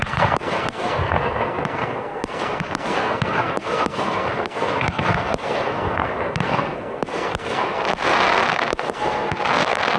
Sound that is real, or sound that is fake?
fake